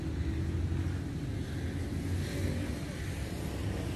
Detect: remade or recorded recorded